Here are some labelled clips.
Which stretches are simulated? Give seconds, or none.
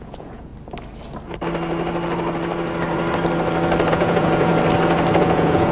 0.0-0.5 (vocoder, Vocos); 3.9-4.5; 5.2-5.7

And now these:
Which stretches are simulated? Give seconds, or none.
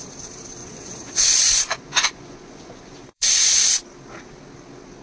0.6-3.6 (vocoder, Vocos)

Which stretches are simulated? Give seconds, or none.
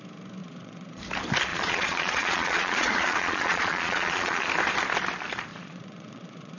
0.4-1.0 (vocoder, Vocos); 1.5-4.5; 5.5-6.6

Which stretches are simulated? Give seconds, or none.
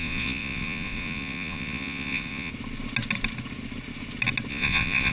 0.0-2.5 (vocoder, Vocos); 4.5-5.1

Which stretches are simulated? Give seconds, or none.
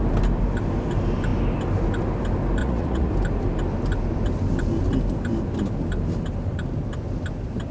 2.6-3.1 (vocoder, Vocos)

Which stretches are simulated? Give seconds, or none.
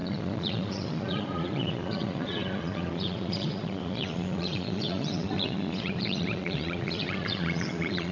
0.0-8.1 (vocoder, Vocos)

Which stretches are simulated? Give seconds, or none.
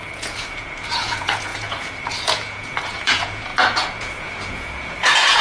0.0-5.4 (vocoder, Vocos)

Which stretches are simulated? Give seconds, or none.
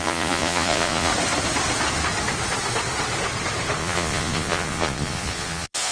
0.0-1.1 (vocoder, Vocos); 3.8-5.9